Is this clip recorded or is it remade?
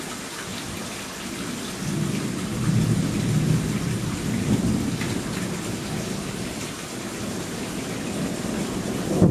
recorded